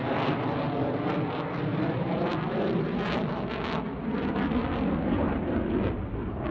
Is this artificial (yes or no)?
no